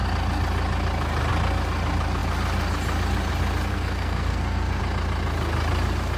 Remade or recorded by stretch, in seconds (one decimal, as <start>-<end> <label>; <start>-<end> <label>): 0.0-3.7 recorded; 3.7-4.8 remade; 4.8-6.2 recorded